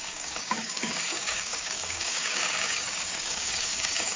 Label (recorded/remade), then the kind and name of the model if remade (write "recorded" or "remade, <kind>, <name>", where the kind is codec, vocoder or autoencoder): remade, codec, DAC